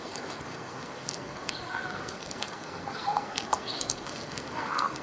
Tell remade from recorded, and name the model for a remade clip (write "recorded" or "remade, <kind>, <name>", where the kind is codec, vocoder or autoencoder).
remade, codec, SNAC